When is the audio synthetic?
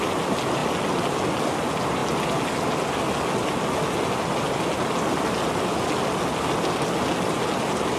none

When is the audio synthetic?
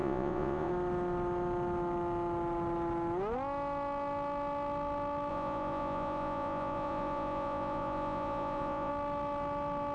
0.0-0.7 (vocoder, Vocos); 5.3-8.9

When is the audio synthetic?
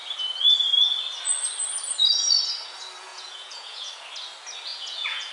3.1-3.9 (vocoder, Vocos); 4.7-5.3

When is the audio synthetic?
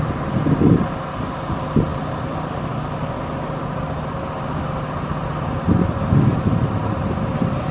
none